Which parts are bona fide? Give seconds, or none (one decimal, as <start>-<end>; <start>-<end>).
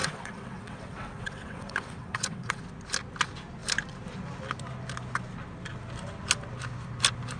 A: 2.6-7.4